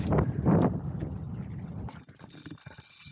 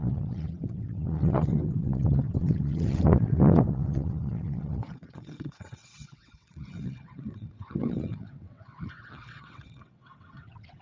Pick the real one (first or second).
first